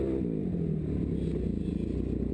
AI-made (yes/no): no